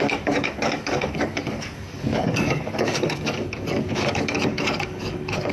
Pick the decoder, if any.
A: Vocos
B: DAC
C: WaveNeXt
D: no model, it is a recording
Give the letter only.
B